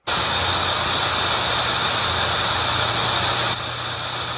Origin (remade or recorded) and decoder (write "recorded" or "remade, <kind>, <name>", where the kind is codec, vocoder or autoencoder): recorded